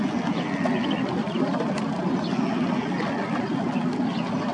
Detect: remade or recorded recorded